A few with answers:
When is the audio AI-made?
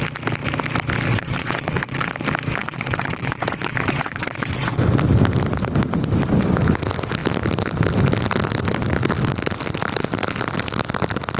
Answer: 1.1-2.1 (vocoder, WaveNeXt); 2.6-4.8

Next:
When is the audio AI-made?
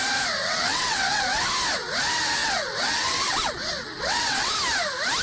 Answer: 0.4-1.2 (vocoder, WaveNeXt); 2.4-4.5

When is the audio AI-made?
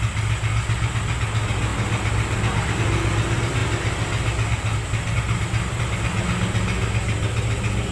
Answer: none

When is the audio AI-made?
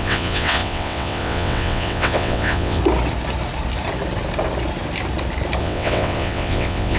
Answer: 0.0-2.8 (vocoder, WaveNeXt); 5.6-7.0